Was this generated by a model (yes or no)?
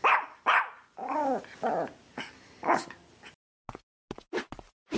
no